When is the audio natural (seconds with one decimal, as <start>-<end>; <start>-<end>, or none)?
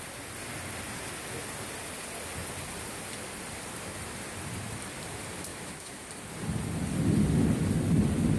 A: 0.0-5.5; 6.1-8.4